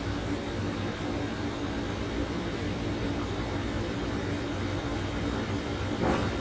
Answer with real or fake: real